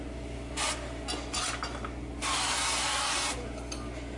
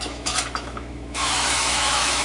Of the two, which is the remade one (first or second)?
second